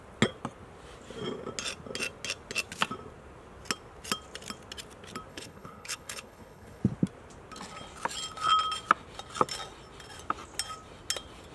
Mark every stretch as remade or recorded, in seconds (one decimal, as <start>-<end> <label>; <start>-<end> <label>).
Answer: 0.0-5.3 recorded; 5.3-6.8 remade; 6.8-11.5 recorded